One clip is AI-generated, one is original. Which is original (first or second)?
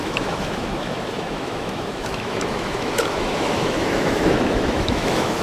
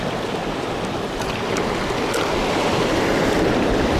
second